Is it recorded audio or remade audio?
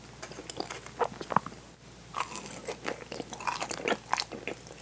recorded